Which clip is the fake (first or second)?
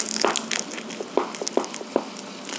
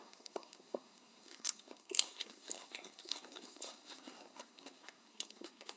second